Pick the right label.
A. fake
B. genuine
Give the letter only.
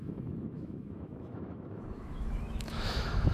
A